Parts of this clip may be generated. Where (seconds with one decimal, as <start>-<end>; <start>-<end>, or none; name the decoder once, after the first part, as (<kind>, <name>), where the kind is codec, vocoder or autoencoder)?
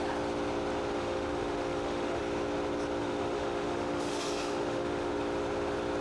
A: 0.9-2.2 (autoencoder, DAC-VAE); 3.0-5.1